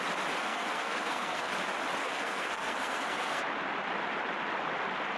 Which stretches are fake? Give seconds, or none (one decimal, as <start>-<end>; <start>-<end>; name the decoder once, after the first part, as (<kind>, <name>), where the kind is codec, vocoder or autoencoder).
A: 0.4-1.5 (codec, SNAC); 2.0-3.4